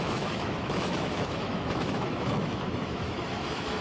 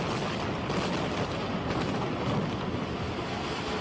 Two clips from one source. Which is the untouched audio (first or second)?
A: second